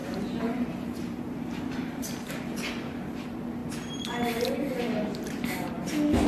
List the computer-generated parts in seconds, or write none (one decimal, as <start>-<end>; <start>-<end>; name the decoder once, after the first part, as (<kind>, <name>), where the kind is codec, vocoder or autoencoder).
0.0-2.3 (vocoder, BigVGAN v2)